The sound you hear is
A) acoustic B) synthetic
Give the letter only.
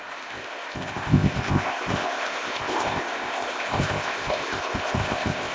B